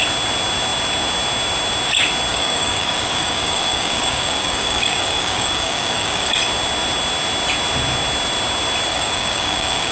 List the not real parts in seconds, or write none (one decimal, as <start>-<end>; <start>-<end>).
2.3-6.4; 8.9-9.9